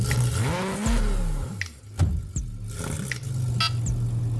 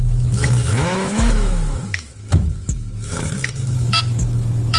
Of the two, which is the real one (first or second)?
first